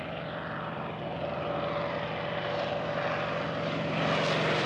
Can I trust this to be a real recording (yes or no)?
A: yes